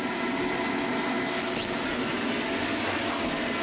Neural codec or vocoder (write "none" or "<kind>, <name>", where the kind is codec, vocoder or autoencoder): none